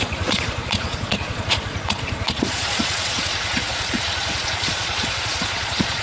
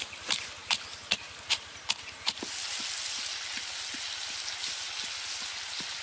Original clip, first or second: second